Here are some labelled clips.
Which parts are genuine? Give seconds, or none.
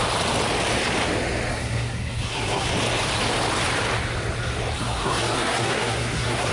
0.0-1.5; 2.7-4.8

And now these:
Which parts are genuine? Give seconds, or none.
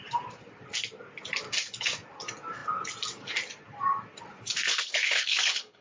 0.0-4.7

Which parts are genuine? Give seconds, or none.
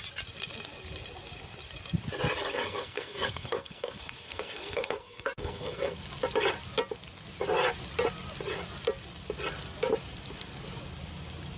0.0-2.5; 6.0-11.6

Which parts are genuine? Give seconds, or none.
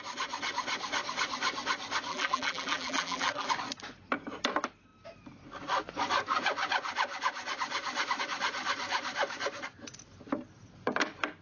0.0-2.1; 3.5-11.4